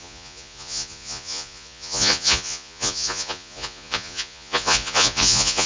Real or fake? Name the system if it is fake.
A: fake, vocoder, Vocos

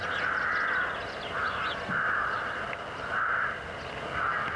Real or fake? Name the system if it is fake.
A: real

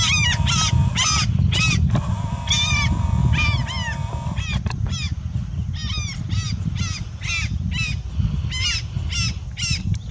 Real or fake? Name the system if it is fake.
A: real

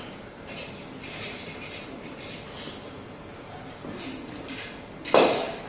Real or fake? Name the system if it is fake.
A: real